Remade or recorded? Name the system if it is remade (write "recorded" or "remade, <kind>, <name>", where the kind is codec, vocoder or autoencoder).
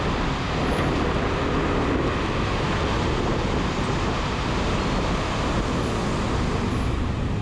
recorded